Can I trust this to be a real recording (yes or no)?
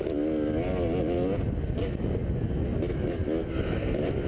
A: yes